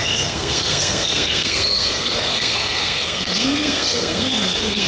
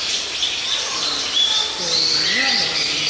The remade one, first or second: first